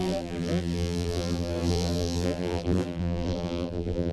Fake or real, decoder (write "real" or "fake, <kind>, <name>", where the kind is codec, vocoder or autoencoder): fake, vocoder, BigVGAN v2